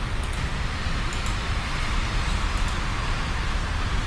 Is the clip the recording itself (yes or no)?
yes